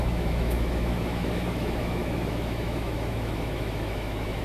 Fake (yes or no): yes